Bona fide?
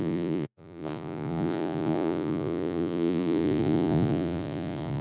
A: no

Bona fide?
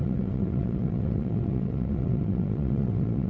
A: no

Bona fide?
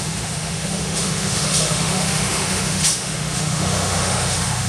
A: no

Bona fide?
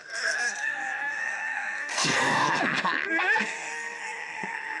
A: no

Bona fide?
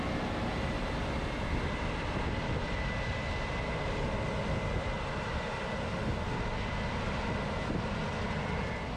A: yes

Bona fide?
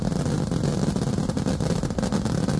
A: yes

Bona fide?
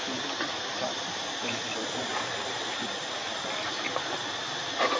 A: yes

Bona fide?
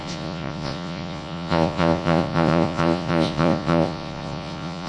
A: no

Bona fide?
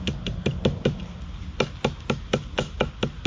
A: yes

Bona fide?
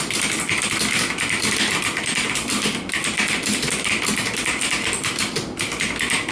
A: yes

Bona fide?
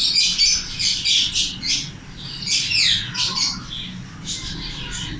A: yes